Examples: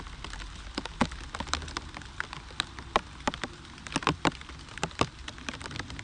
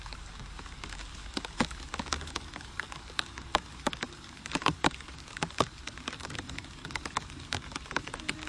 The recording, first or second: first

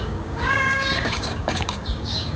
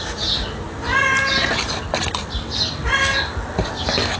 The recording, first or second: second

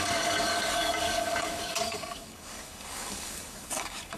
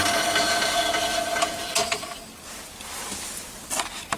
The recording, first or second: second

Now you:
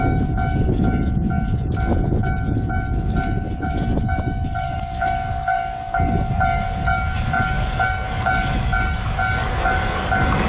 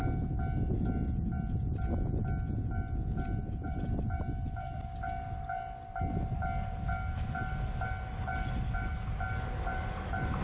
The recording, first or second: second